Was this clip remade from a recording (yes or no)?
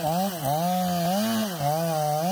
no